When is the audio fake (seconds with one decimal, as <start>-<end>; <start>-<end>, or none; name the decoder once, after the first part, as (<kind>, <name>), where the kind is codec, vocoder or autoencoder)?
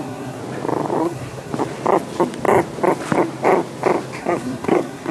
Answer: 0.0-0.4 (codec, SNAC); 1.0-1.5; 4.2-5.1